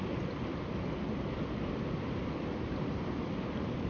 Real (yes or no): yes